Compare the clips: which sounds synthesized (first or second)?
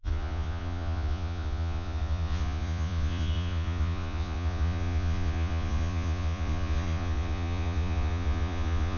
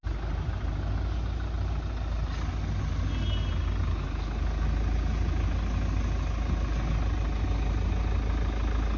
first